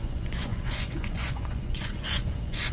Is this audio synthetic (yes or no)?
yes